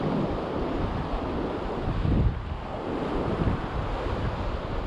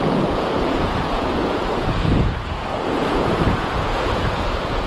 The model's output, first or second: second